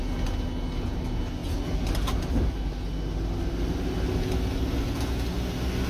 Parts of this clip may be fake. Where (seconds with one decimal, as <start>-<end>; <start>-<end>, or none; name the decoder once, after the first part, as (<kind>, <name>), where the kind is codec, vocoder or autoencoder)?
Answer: none